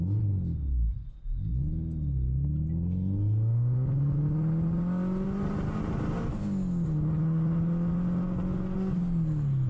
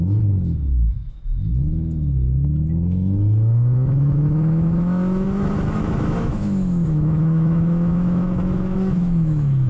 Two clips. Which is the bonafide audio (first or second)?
first